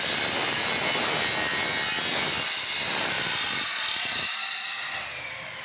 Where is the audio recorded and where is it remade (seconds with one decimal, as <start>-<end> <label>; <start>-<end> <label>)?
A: 0.0-5.6 recorded